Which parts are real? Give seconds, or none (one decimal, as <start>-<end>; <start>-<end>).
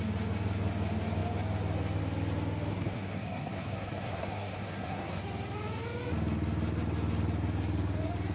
0.0-2.7; 5.2-8.3